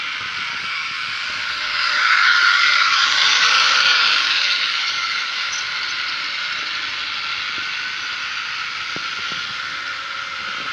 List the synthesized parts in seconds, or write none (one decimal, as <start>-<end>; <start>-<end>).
0.5-5.5